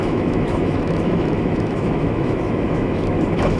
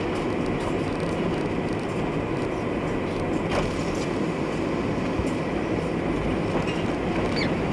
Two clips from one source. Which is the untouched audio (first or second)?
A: second